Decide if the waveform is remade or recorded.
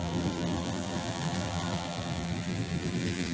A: remade